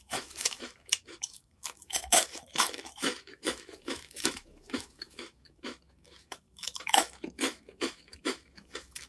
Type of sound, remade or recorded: remade